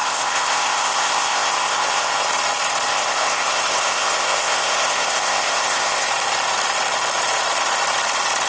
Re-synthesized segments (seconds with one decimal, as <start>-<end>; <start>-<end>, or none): 0.0-2.3; 2.9-6.1